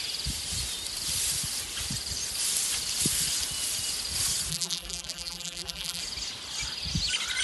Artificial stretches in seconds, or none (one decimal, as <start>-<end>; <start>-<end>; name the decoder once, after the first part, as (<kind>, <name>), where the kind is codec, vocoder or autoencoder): 4.5-6.0 (vocoder, BigVGAN v2)